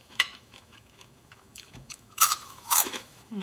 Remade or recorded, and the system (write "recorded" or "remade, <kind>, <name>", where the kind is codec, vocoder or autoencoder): remade, autoencoder, DAC-VAE